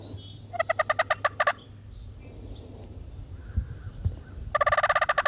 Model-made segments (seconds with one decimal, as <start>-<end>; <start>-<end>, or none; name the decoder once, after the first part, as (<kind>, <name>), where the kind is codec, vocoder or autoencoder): none